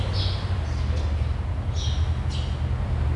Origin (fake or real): real